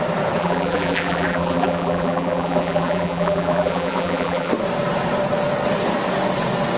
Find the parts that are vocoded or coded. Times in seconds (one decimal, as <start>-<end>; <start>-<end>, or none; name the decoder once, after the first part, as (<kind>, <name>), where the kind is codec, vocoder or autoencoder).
0.4-4.5 (vocoder, BigVGAN v2)